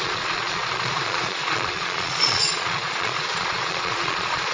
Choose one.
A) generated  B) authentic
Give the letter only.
A